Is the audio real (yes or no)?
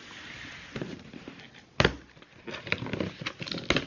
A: yes